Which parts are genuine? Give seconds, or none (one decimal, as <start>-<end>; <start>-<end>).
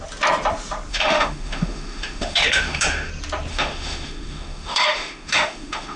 0.0-0.9; 3.1-3.5